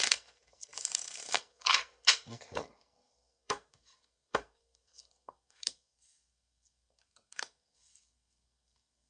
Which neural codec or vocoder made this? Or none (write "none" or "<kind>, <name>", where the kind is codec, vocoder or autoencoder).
codec, SNAC